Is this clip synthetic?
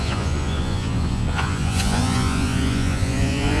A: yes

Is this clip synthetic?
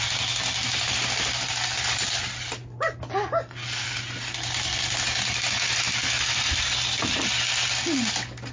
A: no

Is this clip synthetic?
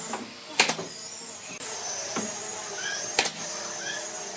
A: no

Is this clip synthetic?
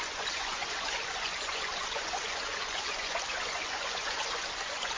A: yes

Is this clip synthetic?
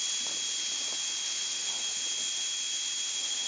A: no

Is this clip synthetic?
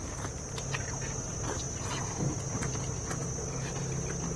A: no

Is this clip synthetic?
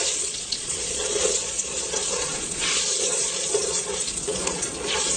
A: yes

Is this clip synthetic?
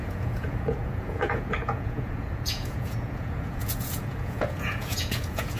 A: yes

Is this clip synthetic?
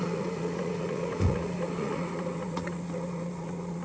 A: yes